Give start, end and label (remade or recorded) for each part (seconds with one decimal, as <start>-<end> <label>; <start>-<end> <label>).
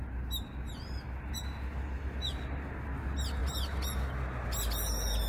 0.0-5.3 recorded